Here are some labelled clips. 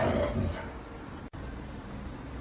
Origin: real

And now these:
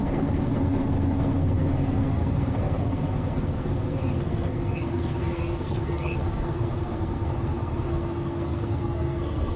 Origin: fake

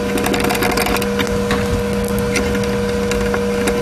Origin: real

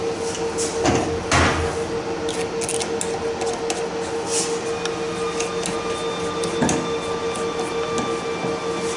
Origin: real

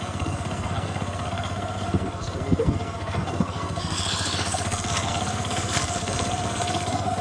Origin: fake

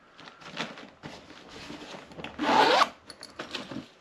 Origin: real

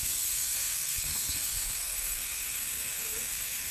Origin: fake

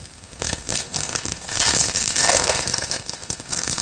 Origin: fake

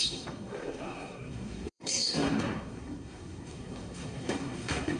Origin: fake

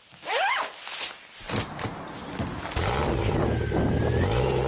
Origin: real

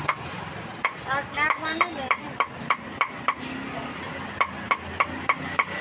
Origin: real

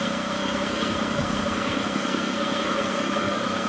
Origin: fake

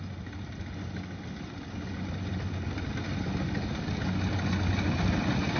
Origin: real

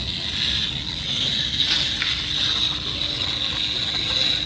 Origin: real